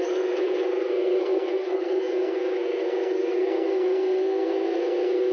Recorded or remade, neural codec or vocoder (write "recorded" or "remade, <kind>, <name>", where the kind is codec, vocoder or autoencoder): remade, codec, SNAC